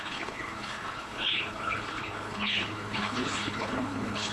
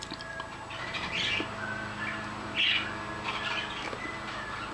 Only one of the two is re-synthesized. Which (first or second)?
first